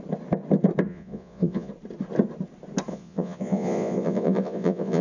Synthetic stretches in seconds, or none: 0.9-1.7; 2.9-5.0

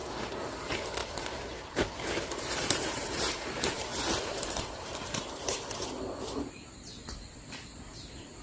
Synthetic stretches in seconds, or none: 0.6-8.4

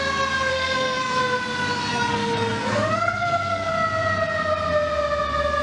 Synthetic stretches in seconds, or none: 0.5-1.2; 1.9-3.7

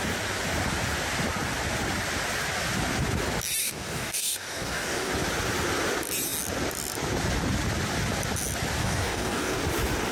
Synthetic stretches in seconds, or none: 3.6-5.1; 8.8-9.6